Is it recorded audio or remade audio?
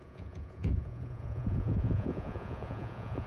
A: remade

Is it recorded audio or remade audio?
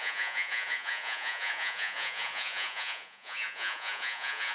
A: remade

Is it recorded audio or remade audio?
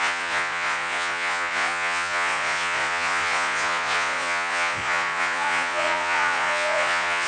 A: remade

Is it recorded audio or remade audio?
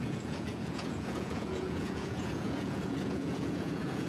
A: remade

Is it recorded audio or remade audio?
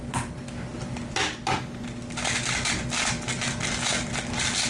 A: recorded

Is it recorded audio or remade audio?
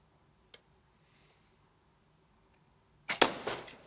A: recorded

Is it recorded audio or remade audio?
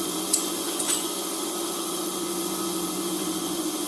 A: remade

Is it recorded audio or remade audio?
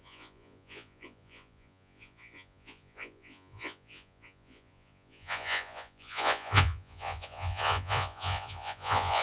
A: remade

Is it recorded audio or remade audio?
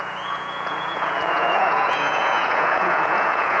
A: remade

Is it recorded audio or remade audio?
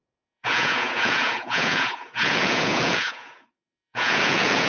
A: remade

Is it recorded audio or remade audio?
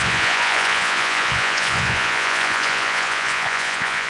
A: remade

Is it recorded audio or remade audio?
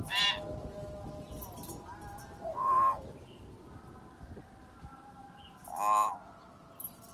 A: recorded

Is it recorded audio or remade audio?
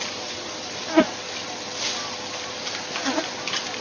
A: recorded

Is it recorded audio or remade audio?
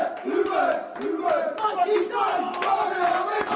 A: recorded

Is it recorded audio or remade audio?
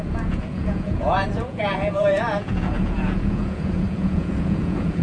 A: remade